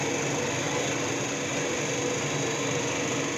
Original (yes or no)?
yes